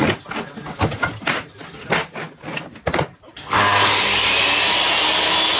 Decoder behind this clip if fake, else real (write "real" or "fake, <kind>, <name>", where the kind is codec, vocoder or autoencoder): real